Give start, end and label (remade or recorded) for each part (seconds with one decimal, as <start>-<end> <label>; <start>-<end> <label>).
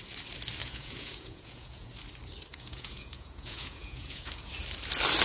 0.0-0.6 recorded; 0.6-1.9 remade; 1.9-2.5 recorded; 2.5-4.5 remade; 4.5-5.2 recorded